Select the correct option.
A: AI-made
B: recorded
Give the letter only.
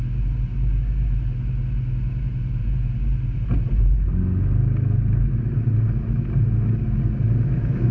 B